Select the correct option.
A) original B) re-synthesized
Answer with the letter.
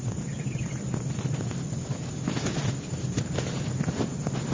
A